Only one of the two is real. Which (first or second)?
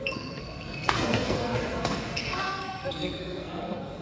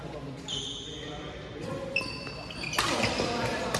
second